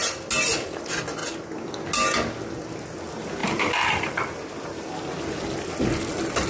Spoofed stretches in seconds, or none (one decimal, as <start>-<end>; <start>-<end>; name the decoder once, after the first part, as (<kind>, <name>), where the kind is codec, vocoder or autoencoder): 3.4-4.2 (vocoder, BigVGAN v2)